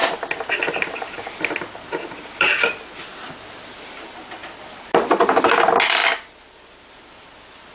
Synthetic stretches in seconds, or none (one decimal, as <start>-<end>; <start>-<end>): none